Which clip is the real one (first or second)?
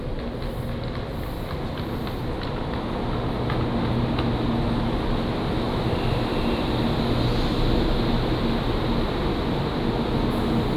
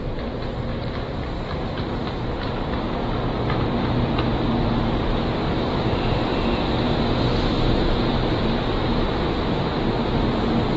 first